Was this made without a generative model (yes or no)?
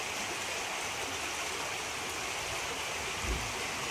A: yes